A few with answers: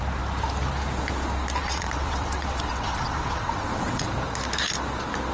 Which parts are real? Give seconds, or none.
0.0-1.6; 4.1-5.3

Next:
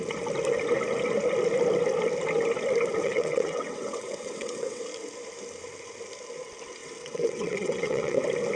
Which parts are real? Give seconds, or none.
0.0-3.0; 4.8-6.8; 8.2-8.6

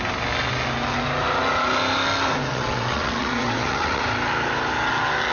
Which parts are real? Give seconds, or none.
0.0-2.5; 4.0-5.3

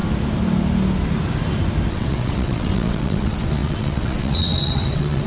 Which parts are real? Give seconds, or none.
0.0-1.9

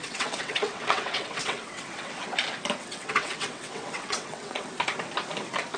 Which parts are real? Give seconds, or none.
2.1-2.8; 4.7-5.8

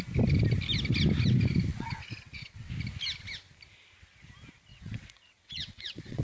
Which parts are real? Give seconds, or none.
0.0-1.7; 2.7-4.7